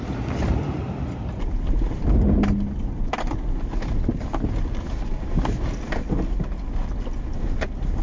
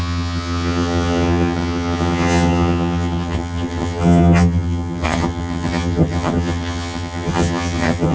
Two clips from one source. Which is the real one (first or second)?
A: first